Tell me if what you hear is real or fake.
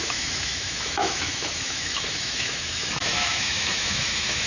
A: fake